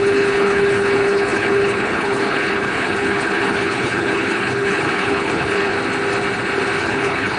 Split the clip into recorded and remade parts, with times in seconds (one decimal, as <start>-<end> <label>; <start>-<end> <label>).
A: 0.0-5.7 remade; 5.7-6.8 recorded; 6.8-7.4 remade

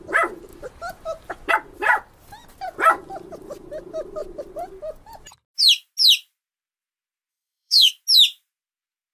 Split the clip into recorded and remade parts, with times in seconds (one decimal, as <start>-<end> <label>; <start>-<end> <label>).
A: 0.0-7.3 recorded; 7.3-7.9 remade; 7.9-9.1 recorded

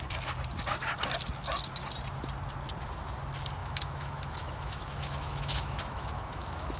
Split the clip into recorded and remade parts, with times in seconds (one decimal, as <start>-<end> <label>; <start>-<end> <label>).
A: 0.0-3.6 recorded; 3.6-6.8 remade

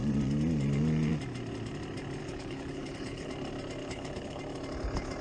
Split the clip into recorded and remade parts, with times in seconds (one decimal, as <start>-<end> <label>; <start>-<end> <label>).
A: 0.0-2.2 recorded; 2.2-3.3 remade; 3.3-3.8 recorded; 3.8-4.4 remade; 4.4-5.2 recorded

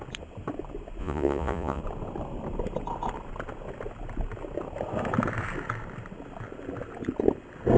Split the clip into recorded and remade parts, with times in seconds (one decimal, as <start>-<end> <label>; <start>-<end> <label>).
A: 0.0-1.0 recorded; 1.0-1.8 remade; 1.8-7.8 recorded

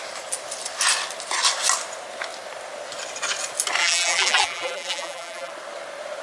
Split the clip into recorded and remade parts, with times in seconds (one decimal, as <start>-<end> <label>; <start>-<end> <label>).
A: 0.0-3.8 recorded; 3.8-5.5 remade; 5.5-6.2 recorded

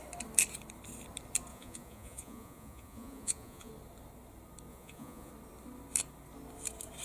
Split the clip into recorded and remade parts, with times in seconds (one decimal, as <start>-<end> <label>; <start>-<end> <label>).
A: 0.0-1.5 recorded; 1.5-3.7 remade; 3.7-4.7 recorded; 4.7-5.3 remade; 5.3-7.0 recorded

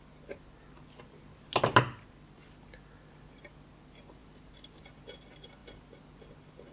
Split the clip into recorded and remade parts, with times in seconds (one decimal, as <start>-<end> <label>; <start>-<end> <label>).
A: 0.0-6.7 recorded